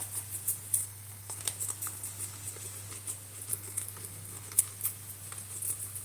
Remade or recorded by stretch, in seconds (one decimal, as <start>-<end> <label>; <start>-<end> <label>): 0.0-0.8 recorded; 0.8-1.4 remade; 1.4-3.5 recorded; 3.5-4.6 remade; 4.6-6.0 recorded